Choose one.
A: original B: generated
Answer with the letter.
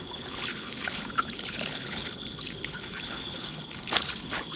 B